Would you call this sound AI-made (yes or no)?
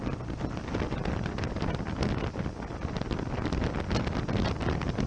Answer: no